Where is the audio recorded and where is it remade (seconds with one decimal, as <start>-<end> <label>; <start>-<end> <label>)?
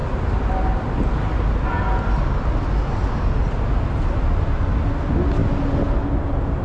0.0-6.6 recorded